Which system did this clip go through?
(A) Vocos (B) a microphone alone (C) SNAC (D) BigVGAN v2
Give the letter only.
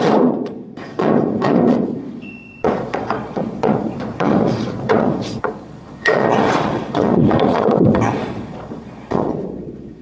A